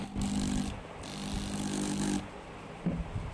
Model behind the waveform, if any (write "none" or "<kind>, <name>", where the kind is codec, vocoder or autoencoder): none